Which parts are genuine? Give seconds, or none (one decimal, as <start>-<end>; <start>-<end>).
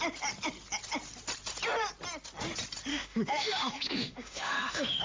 0.0-2.9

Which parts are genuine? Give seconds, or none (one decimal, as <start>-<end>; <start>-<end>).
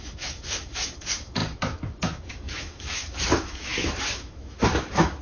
none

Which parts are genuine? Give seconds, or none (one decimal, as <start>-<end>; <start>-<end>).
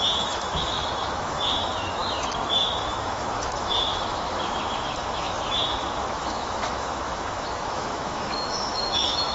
2.0-2.5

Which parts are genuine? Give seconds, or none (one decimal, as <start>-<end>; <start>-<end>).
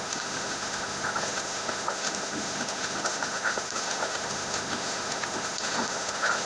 none